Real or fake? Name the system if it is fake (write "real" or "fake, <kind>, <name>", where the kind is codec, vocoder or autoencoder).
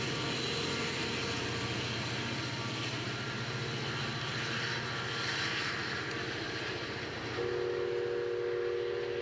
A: real